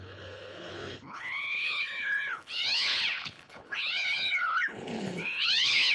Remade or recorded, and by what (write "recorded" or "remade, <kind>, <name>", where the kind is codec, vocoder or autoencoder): remade, codec, HILCodec